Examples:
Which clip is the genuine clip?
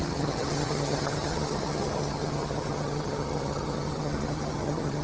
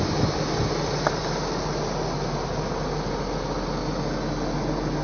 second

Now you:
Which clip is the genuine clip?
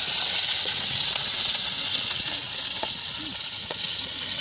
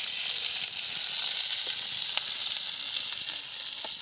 second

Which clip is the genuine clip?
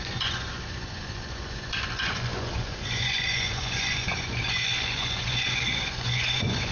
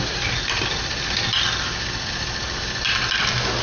second